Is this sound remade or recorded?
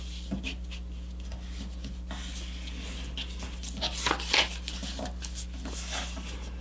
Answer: recorded